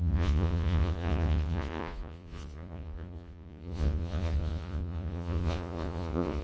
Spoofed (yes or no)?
yes